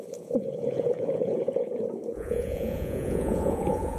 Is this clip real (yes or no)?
no